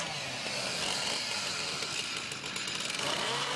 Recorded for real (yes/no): yes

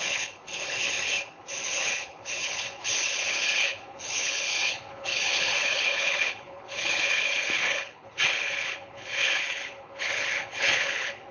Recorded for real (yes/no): no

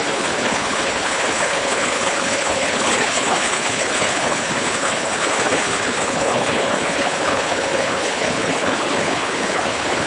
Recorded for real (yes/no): no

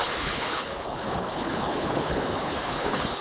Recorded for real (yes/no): no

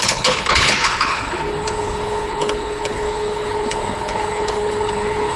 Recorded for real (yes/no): no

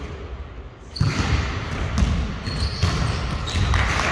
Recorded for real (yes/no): yes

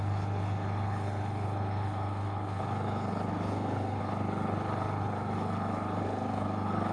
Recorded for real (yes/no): no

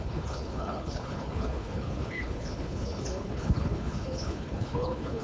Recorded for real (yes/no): no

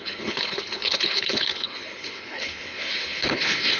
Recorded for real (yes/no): no